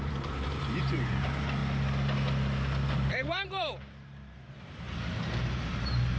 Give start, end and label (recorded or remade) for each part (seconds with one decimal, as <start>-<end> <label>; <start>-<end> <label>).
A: 0.0-1.6 remade; 1.6-2.9 recorded; 2.9-6.2 remade